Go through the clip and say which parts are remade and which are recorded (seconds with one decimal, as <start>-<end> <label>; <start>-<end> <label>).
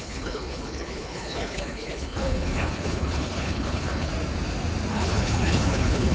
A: 0.0-4.1 remade; 4.1-4.9 recorded; 4.9-6.1 remade